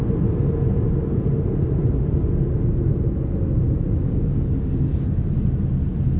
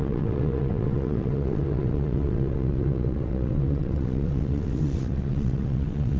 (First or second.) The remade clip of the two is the second